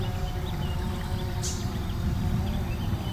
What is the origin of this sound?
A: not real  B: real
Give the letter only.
B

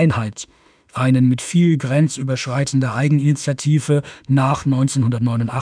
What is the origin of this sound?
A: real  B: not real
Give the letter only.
B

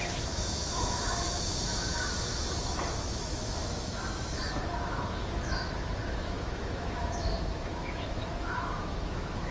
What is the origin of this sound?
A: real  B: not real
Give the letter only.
B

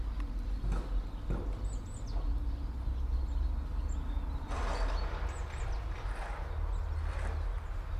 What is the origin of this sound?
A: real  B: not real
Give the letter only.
A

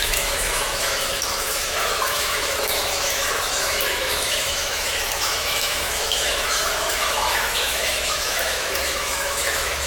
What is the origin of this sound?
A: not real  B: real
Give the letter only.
A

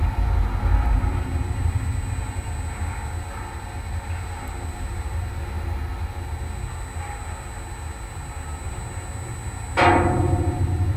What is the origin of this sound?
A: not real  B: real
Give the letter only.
B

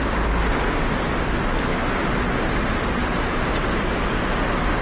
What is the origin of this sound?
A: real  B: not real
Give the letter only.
A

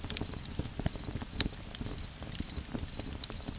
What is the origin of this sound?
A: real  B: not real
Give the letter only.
A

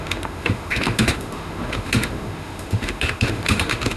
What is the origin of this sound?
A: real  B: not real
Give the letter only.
B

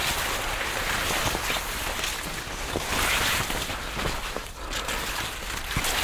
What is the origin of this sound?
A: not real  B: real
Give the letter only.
B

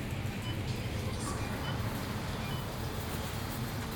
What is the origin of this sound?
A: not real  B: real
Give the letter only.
B